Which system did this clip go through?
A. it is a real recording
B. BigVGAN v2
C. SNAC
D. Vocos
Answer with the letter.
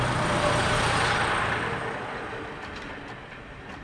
A